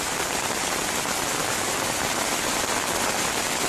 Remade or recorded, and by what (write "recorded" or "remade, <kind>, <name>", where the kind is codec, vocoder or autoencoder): recorded